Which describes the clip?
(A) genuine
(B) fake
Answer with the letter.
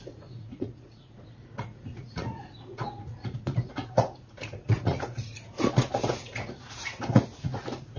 B